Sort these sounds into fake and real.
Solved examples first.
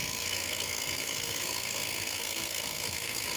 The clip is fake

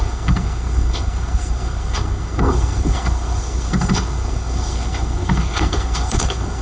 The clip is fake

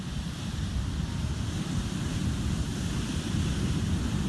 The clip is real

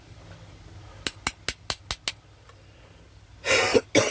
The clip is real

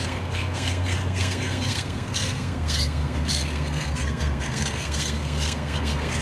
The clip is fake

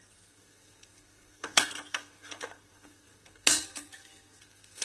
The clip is fake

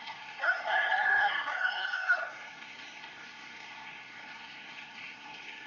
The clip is fake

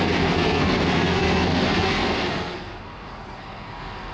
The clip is fake